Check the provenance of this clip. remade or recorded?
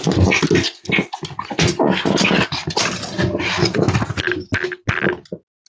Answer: recorded